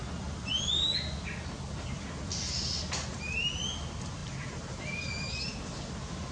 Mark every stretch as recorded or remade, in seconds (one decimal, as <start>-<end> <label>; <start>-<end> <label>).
0.0-6.3 recorded

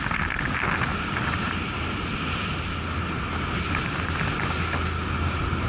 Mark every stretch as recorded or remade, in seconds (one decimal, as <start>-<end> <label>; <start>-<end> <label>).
0.0-5.7 recorded

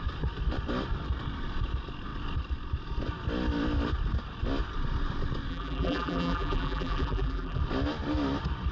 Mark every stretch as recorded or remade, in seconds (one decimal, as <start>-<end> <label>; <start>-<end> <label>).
0.0-5.5 recorded; 5.5-7.6 remade; 7.6-8.7 recorded

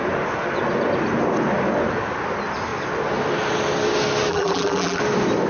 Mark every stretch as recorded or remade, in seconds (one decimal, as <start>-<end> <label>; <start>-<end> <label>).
0.0-4.3 recorded; 4.3-5.0 remade; 5.0-5.5 recorded

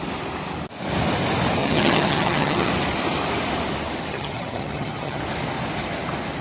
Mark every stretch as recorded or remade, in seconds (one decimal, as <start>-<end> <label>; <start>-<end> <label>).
0.0-1.6 recorded; 1.6-2.7 remade; 2.7-4.1 recorded; 4.1-5.2 remade; 5.2-6.4 recorded